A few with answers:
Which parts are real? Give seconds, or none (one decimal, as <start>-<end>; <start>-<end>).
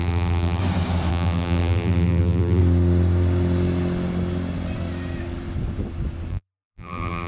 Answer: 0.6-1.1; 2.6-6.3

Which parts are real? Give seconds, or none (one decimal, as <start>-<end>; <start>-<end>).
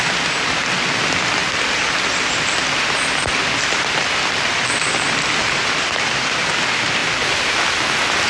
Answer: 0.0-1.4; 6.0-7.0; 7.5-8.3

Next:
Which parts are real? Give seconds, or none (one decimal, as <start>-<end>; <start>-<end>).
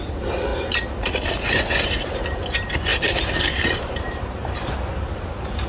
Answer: 0.5-1.3; 4.4-4.9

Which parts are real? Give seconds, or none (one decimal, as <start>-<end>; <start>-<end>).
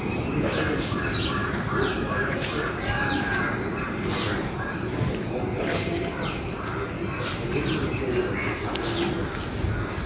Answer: 0.0-1.4; 3.4-4.3; 6.4-10.1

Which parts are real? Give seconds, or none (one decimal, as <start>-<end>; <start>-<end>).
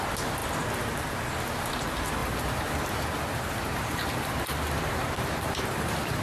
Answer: 0.0-2.2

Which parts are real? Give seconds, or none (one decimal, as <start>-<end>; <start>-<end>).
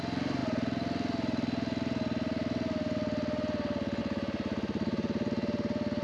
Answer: 0.0-6.0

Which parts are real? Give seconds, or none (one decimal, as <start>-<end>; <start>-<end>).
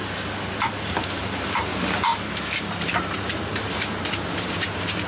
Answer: 0.0-0.7; 2.1-2.8